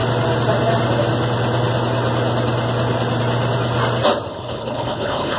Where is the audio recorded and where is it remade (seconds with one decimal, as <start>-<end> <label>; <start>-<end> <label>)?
0.0-4.3 recorded; 4.3-5.4 remade